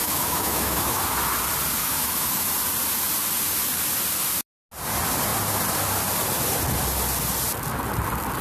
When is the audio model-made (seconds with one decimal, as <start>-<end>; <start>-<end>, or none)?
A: 0.0-1.0; 1.8-2.5